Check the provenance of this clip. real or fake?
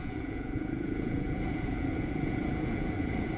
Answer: fake